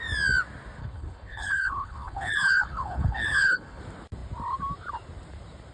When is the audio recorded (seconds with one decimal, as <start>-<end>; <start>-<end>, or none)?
0.0-0.8; 3.8-5.7